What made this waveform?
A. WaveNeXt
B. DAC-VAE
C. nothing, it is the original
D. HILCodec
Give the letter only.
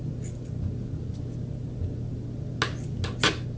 C